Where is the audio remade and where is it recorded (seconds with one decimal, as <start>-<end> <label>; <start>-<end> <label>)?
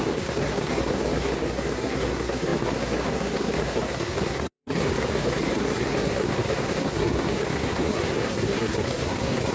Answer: 0.0-9.5 remade